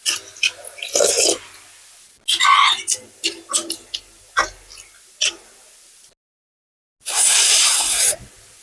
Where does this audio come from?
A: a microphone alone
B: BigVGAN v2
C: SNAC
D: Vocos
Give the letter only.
A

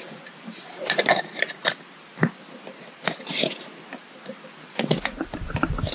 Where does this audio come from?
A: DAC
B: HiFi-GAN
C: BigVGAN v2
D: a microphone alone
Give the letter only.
C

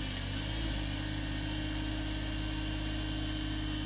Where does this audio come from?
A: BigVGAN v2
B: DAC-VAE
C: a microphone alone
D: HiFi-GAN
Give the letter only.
C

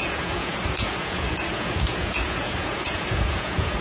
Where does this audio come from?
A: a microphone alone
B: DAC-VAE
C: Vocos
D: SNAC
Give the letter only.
C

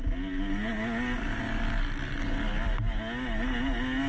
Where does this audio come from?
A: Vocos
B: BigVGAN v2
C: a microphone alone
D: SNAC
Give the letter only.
C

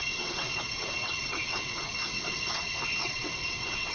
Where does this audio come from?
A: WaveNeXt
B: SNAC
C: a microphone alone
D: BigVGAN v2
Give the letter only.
A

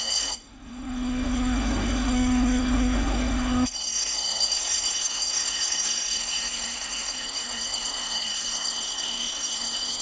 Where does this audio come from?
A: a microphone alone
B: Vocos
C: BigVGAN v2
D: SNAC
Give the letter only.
D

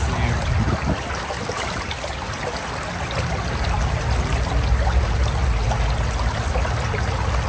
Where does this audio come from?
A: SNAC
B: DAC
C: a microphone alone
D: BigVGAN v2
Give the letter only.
C